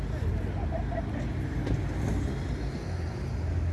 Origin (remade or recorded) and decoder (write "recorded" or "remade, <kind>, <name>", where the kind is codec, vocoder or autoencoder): recorded